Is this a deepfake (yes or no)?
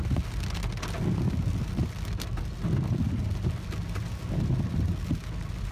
no